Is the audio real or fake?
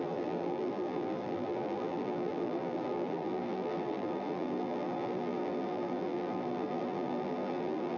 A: fake